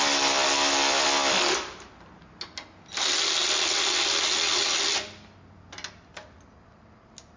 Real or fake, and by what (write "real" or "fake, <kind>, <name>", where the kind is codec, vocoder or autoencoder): real